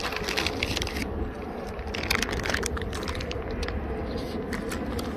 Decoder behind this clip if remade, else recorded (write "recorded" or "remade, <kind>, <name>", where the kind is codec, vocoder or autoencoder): recorded